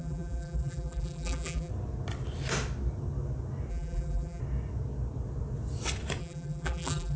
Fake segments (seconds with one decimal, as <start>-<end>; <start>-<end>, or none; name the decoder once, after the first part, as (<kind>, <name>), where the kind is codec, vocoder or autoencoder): 0.0-1.7 (vocoder, BigVGAN v2); 3.7-4.4; 6.2-7.2